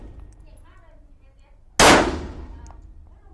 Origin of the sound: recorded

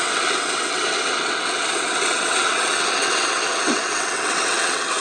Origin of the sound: remade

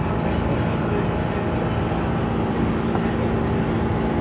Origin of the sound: recorded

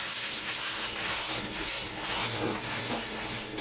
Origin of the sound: remade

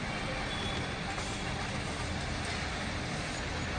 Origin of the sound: remade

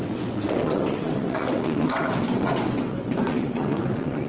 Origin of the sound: remade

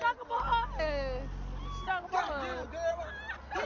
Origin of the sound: recorded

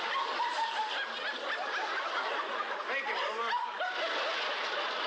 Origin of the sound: recorded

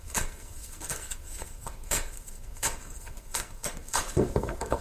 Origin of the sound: remade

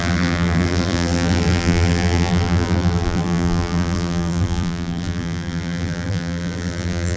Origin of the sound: remade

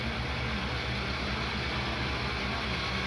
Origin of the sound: recorded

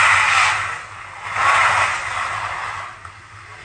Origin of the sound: recorded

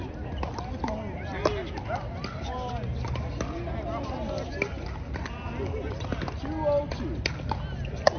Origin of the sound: recorded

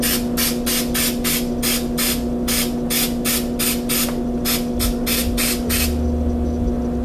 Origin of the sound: recorded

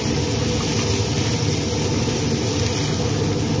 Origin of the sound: recorded